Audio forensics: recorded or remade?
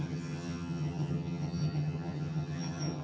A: remade